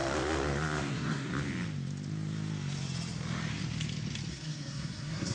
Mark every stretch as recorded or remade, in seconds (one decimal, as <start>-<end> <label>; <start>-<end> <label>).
0.0-0.9 recorded; 0.9-1.3 remade; 1.3-4.3 recorded; 4.3-5.3 remade